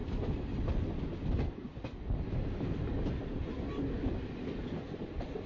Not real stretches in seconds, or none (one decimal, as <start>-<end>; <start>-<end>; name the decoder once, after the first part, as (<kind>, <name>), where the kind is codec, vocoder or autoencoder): none